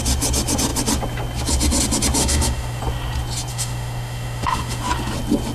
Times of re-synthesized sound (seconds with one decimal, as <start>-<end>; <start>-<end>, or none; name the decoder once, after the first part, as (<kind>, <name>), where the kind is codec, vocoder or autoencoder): 2.2-2.8 (autoencoder, DAC-VAE); 3.5-4.8